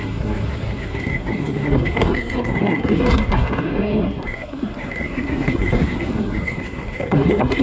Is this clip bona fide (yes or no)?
no